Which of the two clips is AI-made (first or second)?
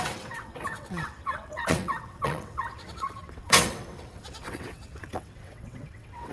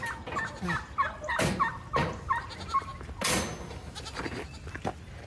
first